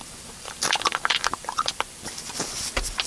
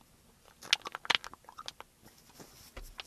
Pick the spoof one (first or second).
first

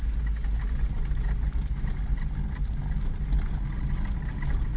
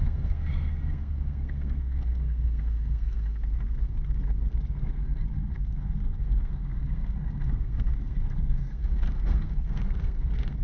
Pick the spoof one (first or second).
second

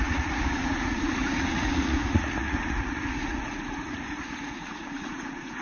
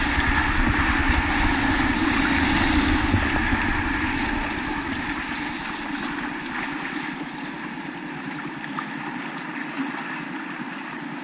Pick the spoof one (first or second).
first